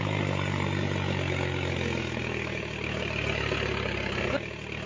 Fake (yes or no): no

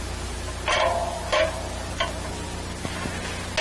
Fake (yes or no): no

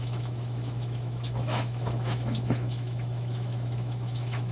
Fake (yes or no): yes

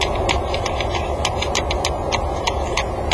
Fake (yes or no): no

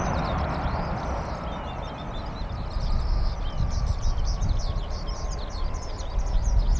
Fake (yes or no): no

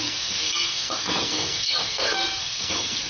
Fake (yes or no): yes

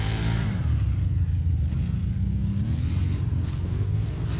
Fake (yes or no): no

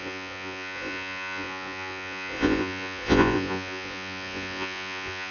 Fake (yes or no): yes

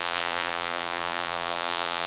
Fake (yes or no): yes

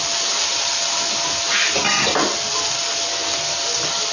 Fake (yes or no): no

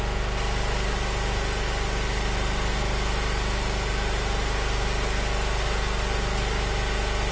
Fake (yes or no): no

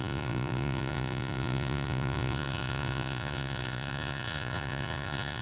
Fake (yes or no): yes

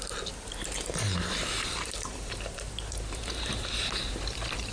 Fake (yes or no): yes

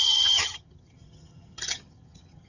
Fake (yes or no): yes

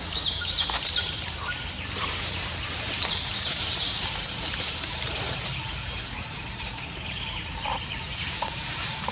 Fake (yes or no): yes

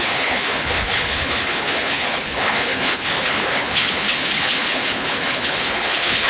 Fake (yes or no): yes